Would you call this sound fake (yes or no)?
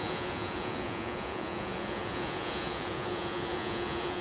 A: yes